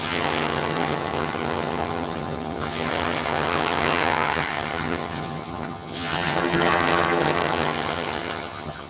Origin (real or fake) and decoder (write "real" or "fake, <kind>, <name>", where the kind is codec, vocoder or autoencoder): fake, vocoder, HiFi-GAN